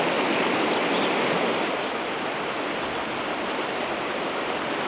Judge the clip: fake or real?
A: real